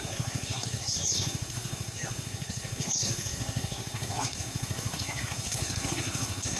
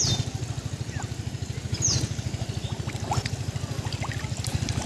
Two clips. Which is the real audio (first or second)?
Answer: second